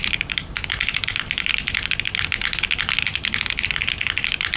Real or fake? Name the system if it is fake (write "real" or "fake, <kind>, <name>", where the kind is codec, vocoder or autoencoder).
real